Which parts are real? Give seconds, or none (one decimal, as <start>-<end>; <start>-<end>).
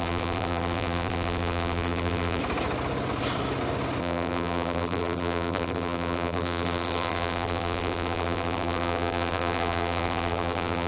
2.4-4.0